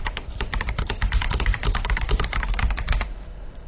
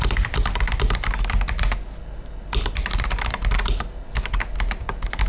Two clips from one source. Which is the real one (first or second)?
second